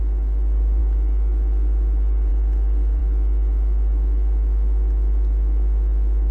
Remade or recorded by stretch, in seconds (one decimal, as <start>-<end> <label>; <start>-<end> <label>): 0.0-6.3 recorded